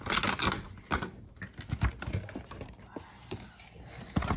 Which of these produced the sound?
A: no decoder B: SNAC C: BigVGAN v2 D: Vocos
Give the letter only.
A